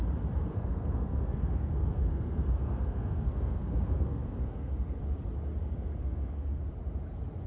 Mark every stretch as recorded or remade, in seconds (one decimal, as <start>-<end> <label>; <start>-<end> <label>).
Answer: 0.0-0.5 recorded; 0.5-5.0 remade; 5.0-5.6 recorded; 5.6-6.6 remade; 6.6-7.5 recorded